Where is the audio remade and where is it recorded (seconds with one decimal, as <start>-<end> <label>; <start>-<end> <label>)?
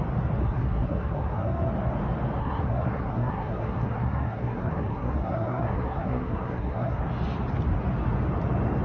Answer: 0.0-0.4 recorded; 0.4-1.7 remade; 1.7-2.4 recorded; 2.4-7.0 remade; 7.0-8.8 recorded